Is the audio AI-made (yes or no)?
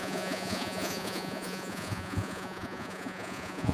yes